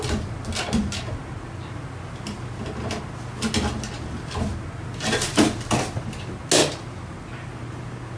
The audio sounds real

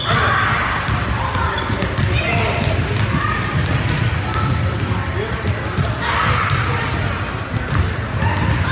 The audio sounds real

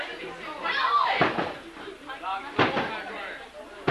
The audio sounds real